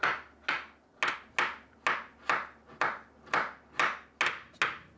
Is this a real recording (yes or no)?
yes